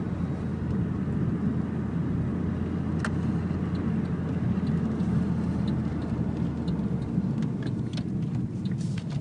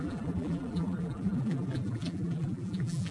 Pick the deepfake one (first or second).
second